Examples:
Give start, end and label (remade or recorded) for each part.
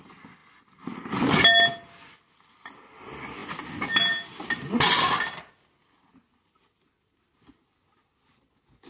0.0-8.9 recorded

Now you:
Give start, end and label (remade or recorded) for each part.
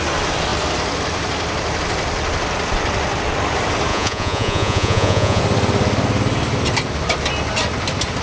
0.0-3.9 recorded; 3.9-5.4 remade; 5.4-8.2 recorded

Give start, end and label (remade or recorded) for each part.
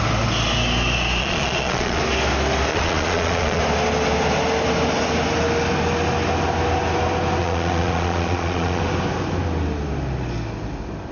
0.0-1.2 recorded; 1.2-2.0 remade; 2.0-2.7 recorded; 2.7-3.6 remade; 3.6-7.4 recorded; 7.4-8.8 remade; 8.8-11.1 recorded